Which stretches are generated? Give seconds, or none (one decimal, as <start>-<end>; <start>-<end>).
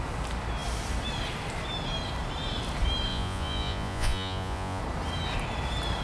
3.1-4.8